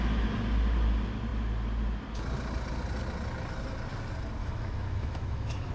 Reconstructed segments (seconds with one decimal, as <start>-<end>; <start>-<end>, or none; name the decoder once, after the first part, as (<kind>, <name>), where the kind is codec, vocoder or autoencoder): 4.4-5.7 (autoencoder, DAC-VAE)